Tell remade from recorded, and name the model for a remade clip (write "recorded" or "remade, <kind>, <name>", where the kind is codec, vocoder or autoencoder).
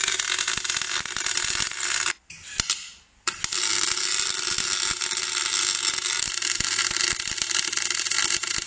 recorded